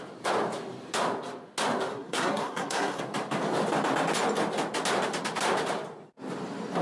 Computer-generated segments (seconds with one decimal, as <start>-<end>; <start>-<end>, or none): 1.9-3.0